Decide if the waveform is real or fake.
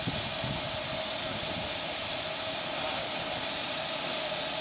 real